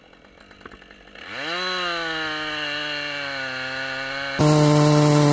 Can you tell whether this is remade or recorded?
recorded